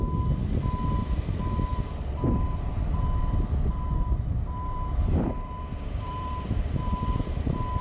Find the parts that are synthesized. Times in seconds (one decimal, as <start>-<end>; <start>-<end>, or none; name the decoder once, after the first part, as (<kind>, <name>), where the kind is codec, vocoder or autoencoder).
1.7-3.2 (vocoder, BigVGAN v2); 3.7-7.3